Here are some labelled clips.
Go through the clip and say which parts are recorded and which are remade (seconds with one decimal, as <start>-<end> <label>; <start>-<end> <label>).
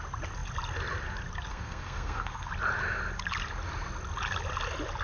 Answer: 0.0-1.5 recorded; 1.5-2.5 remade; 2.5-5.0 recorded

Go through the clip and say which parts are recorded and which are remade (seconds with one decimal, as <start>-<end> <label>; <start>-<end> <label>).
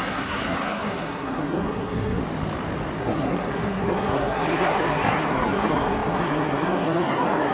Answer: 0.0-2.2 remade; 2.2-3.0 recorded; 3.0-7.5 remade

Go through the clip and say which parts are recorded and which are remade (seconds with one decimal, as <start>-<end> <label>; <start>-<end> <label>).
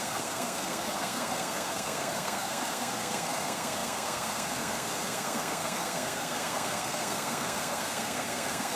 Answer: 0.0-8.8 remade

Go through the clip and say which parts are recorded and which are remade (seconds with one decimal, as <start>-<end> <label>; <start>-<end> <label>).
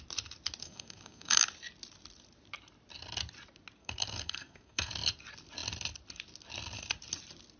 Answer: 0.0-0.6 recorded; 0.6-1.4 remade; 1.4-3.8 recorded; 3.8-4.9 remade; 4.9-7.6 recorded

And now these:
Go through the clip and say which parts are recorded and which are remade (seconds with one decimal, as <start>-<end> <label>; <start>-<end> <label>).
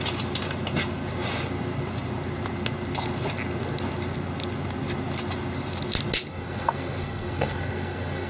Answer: 0.0-6.3 recorded; 6.3-8.3 remade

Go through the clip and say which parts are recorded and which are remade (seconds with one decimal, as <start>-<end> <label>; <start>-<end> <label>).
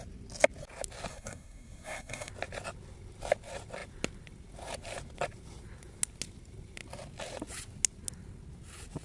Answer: 0.0-1.1 recorded; 1.1-2.3 remade; 2.3-9.0 recorded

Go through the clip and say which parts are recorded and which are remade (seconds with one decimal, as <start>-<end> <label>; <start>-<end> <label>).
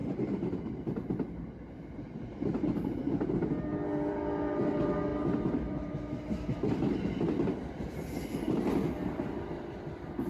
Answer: 0.0-10.3 recorded